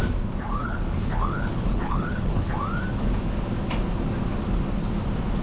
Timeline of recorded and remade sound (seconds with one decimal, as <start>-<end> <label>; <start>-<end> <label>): 0.0-0.6 recorded; 0.6-2.5 remade; 2.5-5.4 recorded